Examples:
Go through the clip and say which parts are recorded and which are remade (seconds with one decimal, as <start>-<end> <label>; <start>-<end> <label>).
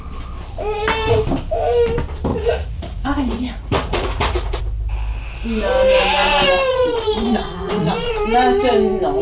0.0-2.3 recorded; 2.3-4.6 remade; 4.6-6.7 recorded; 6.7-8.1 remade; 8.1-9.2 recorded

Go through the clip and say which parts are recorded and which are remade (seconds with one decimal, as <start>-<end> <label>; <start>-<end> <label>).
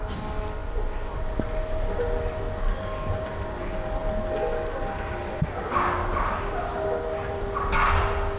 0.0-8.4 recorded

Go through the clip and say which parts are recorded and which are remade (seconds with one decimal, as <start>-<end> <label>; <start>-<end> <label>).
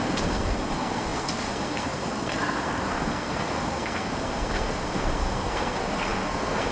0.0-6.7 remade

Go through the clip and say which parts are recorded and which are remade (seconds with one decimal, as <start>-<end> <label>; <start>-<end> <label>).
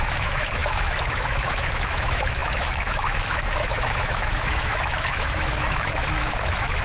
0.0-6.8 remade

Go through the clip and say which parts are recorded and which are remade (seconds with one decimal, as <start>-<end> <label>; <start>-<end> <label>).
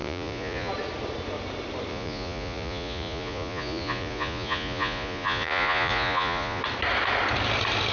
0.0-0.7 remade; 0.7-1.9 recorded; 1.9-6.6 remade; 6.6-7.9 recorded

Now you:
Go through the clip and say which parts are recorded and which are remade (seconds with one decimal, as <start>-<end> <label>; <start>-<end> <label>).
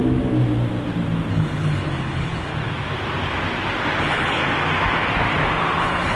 0.0-1.3 recorded; 1.3-2.5 remade; 2.5-4.0 recorded; 4.0-4.4 remade; 4.4-5.8 recorded; 5.8-6.2 remade